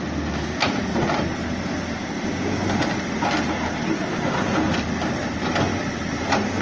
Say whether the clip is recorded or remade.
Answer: recorded